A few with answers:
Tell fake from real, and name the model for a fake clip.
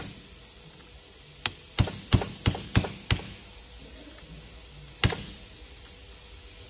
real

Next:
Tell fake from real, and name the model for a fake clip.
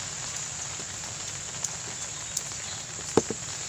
real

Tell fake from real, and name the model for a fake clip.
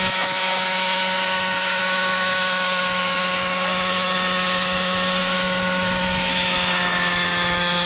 fake, autoencoder, DAC-VAE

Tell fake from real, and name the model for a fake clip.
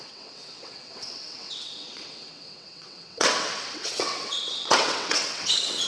fake, vocoder, WaveNeXt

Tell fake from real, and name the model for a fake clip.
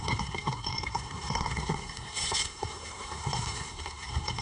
fake, codec, SNAC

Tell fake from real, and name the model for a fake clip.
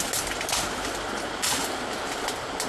real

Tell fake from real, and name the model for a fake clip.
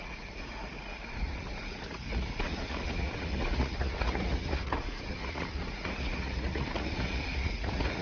fake, vocoder, Vocos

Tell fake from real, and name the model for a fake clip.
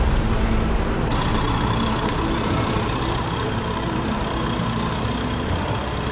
fake, vocoder, BigVGAN v2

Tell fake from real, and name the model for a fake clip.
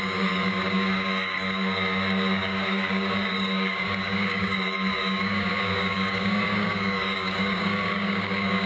fake, codec, DAC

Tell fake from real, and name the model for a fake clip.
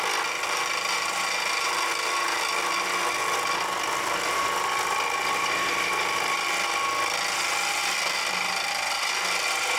real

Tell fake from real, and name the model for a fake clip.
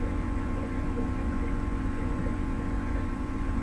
fake, vocoder, Vocos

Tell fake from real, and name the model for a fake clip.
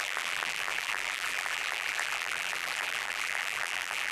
fake, vocoder, BigVGAN v2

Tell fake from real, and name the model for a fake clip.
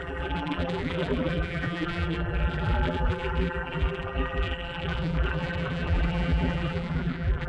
fake, vocoder, BigVGAN v2